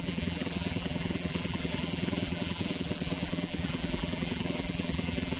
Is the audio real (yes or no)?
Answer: no